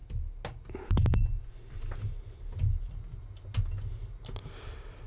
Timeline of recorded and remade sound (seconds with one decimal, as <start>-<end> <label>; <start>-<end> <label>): 0.0-5.1 recorded